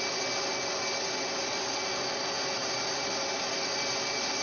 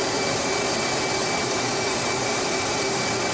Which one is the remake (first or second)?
second